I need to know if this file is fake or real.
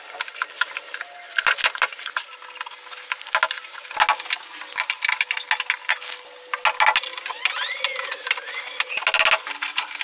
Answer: real